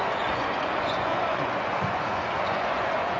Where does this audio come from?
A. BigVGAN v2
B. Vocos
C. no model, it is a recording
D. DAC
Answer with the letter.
B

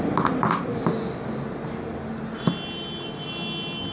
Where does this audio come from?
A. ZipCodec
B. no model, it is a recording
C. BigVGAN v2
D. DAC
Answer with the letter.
B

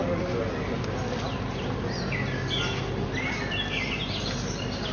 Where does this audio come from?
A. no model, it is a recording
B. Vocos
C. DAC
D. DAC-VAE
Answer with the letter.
A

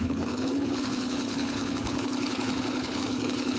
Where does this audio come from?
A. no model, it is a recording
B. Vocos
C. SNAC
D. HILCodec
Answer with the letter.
D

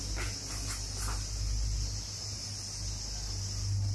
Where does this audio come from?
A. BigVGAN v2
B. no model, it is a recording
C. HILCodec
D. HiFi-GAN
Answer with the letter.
B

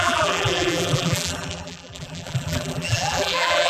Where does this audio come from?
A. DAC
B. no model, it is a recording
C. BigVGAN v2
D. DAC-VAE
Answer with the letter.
C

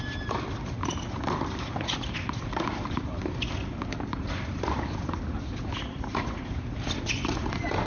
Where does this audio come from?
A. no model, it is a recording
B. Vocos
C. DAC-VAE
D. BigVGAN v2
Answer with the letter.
D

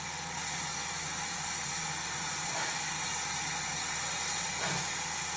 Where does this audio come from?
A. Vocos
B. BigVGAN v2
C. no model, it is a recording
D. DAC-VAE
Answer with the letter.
C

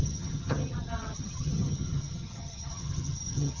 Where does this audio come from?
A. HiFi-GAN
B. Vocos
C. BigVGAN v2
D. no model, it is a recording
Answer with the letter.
A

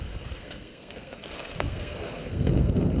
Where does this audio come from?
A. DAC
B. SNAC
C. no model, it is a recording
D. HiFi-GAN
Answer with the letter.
B